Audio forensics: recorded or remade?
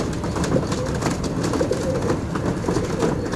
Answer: recorded